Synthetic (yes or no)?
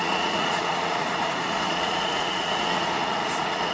yes